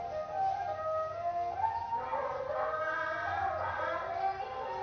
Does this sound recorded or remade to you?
recorded